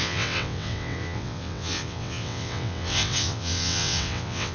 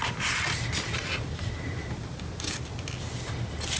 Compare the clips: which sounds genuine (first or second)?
second